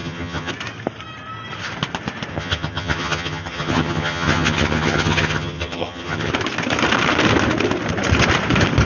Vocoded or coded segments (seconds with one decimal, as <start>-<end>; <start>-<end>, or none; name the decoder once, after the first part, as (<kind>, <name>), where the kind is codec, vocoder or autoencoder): 0.0-0.5 (vocoder, HiFi-GAN); 2.3-6.3